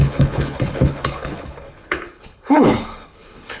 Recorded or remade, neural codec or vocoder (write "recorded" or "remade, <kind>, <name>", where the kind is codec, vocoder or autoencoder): remade, codec, HILCodec